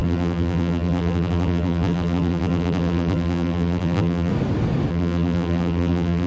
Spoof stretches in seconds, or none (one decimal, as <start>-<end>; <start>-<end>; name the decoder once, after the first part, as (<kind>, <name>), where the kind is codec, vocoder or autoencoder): 0.0-4.3 (vocoder, BigVGAN v2); 4.9-6.3